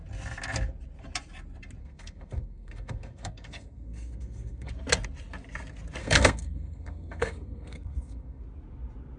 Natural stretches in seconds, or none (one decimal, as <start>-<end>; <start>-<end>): 0.0-1.8; 4.7-6.0; 8.4-9.2

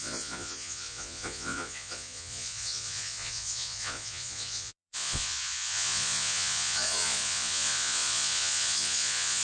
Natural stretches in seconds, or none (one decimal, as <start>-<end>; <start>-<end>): none

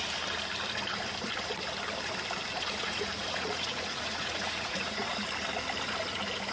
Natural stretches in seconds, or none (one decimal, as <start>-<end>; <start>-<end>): 0.0-2.5; 5.3-6.5

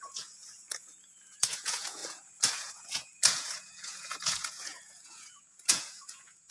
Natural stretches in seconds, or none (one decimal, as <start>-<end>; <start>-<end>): none

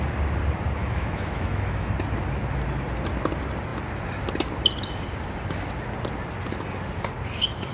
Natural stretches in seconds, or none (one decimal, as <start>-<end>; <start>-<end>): 0.0-0.8; 1.9-7.7

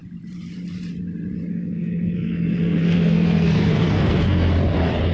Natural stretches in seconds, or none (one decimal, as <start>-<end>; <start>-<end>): 0.0-1.5; 4.5-5.1